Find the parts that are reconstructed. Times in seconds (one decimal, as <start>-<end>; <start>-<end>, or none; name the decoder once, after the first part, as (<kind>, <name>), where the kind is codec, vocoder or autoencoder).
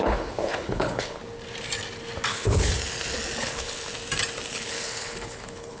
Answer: 0.0-1.2 (codec, HILCodec); 2.3-2.7; 3.4-3.9; 4.5-5.8